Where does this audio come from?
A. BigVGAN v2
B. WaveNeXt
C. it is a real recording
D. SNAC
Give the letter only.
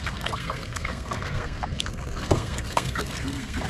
D